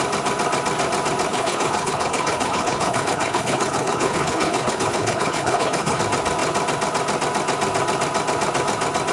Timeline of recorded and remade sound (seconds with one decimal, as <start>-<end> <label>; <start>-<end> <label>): 0.0-1.3 recorded; 1.3-6.0 remade; 6.0-9.1 recorded